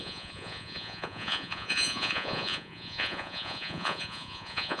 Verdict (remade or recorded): remade